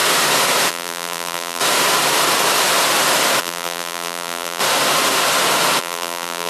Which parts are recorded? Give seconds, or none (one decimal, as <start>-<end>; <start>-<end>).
0.0-0.7; 1.6-3.4; 4.6-5.8